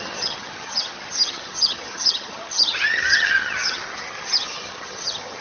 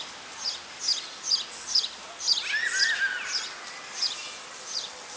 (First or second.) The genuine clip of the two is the second